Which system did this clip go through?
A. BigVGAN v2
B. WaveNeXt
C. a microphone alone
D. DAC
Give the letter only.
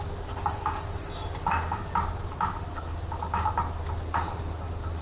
C